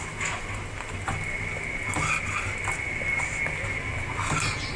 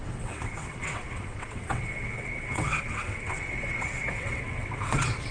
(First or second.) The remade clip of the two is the second